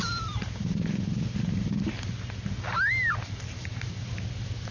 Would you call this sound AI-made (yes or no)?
no